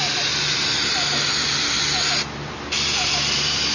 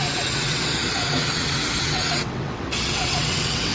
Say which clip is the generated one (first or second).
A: second